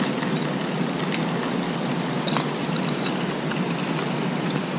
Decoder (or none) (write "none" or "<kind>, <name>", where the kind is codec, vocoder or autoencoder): none